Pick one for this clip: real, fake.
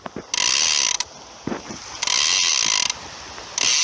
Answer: real